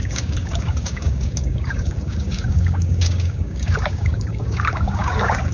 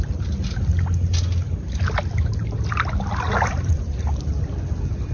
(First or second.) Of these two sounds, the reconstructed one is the first